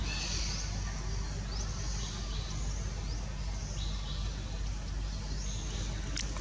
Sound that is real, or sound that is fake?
real